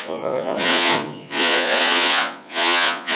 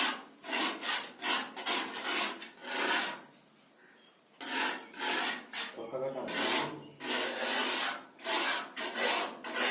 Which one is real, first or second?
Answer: second